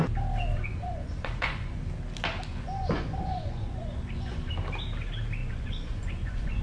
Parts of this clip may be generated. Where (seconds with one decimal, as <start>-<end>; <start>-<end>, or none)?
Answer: 0.5-1.8; 2.5-4.5; 5.4-6.6